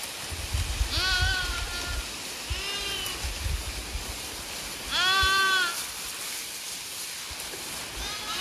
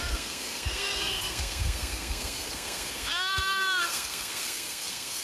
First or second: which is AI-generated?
second